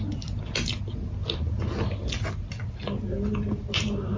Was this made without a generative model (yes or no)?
yes